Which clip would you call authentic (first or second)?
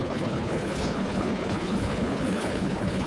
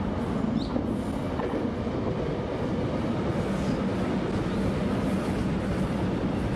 second